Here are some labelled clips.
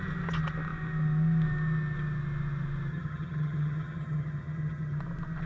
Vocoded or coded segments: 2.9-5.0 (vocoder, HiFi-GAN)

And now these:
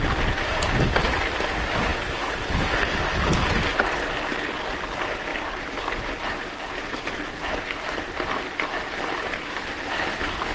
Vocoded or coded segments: none

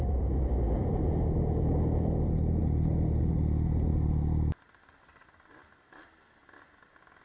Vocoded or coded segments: none

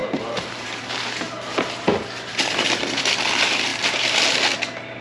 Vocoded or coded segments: 0.0-3.0 (vocoder, BigVGAN v2)